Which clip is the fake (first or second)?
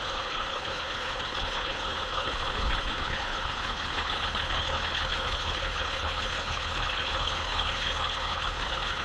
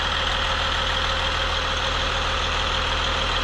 first